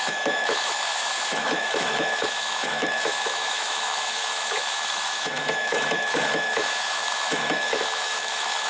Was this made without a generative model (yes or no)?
no